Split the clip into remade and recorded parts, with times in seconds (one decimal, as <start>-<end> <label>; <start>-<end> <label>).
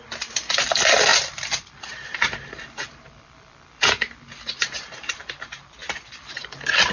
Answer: 0.0-1.1 recorded; 1.1-5.2 remade; 5.2-5.8 recorded; 5.8-6.9 remade